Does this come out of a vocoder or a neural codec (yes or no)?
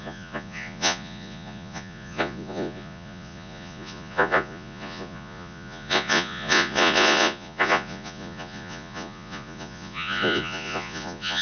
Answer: yes